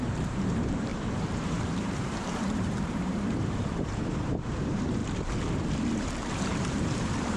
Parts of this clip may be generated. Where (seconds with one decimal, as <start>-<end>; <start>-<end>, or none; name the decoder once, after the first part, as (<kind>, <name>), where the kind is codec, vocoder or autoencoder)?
0.0-5.0 (vocoder, BigVGAN v2); 6.3-7.4